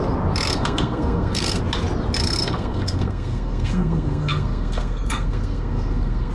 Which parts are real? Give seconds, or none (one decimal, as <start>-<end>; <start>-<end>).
0.0-0.5; 1.6-2.2